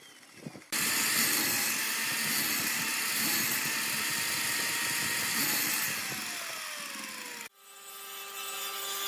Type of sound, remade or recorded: recorded